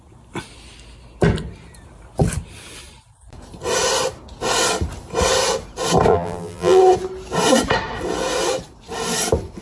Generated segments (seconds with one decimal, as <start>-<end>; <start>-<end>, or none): 6.1-6.8